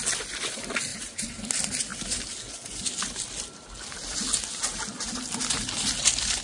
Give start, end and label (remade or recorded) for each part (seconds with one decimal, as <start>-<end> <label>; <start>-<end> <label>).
0.0-0.9 recorded; 0.9-1.4 remade; 1.4-6.4 recorded